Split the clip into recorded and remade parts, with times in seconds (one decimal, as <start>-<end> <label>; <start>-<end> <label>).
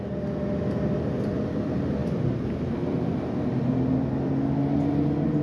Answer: 0.0-5.4 recorded